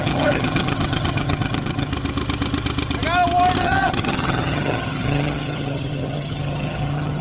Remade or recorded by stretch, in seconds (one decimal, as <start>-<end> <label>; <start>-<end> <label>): 0.0-1.9 remade; 1.9-3.6 recorded; 3.6-7.2 remade